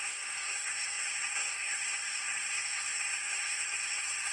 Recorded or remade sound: remade